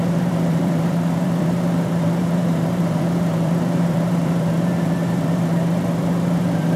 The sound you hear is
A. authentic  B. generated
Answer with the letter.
B